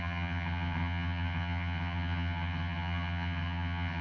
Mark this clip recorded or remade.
remade